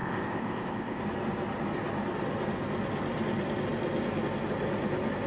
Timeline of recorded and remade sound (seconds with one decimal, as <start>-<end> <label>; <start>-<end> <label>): 0.0-1.0 remade; 1.0-5.3 recorded